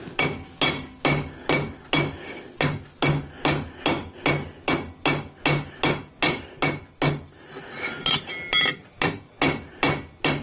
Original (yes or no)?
yes